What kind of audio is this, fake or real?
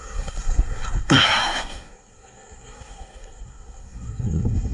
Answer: fake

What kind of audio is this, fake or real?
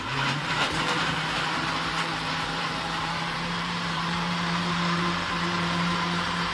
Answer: fake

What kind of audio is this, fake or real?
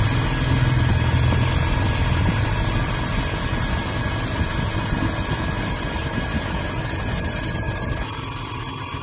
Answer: real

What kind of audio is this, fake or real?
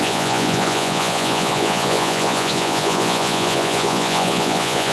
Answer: fake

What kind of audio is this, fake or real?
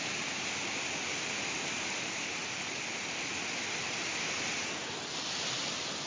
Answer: real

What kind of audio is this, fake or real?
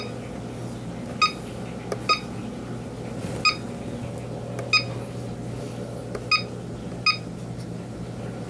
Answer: real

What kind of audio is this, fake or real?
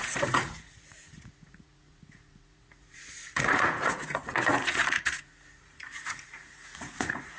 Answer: fake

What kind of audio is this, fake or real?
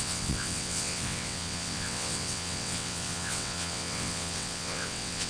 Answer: fake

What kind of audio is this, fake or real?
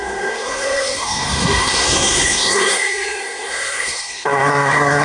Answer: fake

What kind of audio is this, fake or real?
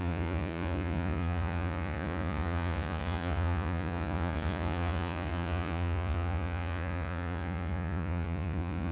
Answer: fake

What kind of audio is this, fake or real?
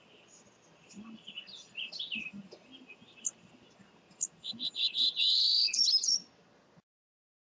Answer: real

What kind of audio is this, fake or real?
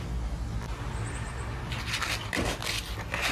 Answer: real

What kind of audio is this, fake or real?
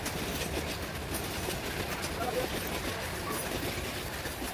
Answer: real